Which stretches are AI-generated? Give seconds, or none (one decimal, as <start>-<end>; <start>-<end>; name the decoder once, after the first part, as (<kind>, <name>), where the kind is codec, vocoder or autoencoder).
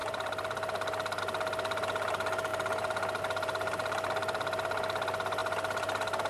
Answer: none